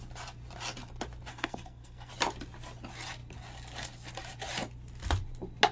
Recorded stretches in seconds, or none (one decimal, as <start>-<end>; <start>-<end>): 0.0-1.3; 2.1-5.7